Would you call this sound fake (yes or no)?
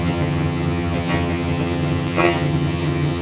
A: yes